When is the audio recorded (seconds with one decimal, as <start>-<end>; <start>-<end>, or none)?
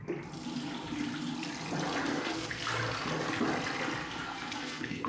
0.0-2.0; 2.6-4.0